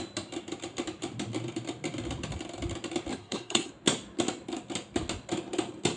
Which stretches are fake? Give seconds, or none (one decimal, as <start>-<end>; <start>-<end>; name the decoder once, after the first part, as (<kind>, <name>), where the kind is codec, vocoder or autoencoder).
3.1-3.7 (codec, SNAC)